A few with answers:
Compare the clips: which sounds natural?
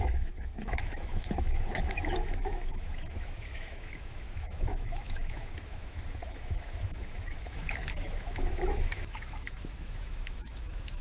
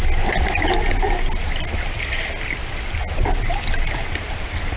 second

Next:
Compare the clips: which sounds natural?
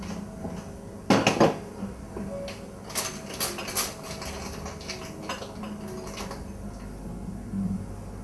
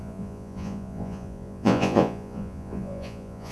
first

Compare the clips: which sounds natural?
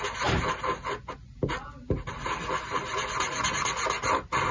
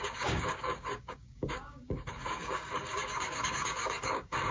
first